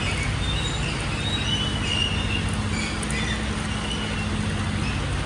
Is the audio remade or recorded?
recorded